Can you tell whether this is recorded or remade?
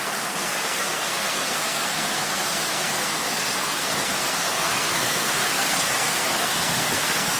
remade